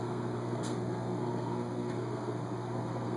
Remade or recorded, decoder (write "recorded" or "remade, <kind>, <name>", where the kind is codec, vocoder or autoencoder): remade, codec, SNAC